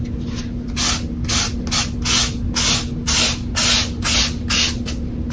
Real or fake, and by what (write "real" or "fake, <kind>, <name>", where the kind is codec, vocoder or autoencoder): real